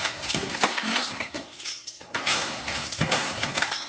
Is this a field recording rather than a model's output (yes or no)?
no